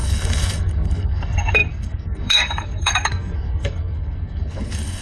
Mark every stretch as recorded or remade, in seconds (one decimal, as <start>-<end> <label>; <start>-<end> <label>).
0.0-5.0 remade